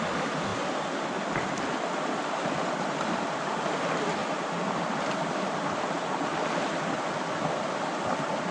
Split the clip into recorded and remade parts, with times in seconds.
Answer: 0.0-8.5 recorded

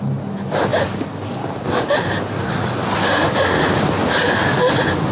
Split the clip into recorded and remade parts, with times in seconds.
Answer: 0.0-5.1 recorded

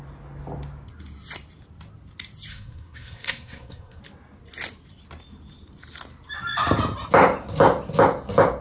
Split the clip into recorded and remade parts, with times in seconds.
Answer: 0.0-2.5 recorded; 2.5-4.0 remade; 4.0-8.6 recorded

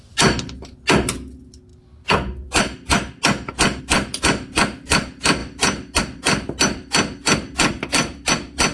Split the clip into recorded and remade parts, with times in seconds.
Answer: 0.0-8.7 recorded